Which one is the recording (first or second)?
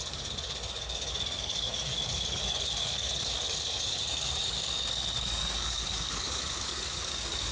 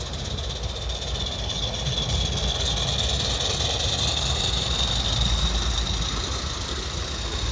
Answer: second